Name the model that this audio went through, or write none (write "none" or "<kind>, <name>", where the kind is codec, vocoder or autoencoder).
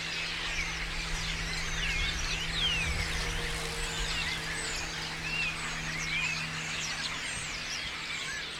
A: none